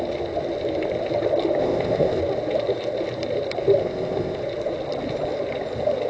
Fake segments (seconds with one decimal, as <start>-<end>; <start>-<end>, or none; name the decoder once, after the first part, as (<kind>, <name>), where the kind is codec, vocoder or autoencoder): 1.6-2.2 (codec, ZipCodec); 3.8-4.4